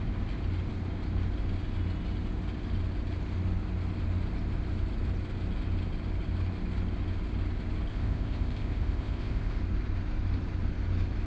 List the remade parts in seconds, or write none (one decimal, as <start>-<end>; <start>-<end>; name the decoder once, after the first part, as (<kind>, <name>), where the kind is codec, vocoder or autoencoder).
7.9-9.6 (codec, ZipCodec)